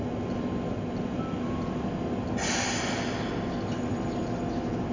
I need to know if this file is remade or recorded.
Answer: recorded